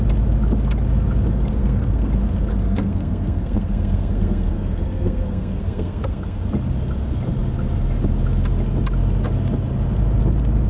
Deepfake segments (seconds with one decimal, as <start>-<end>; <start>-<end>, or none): 1.6-2.1; 2.5-6.4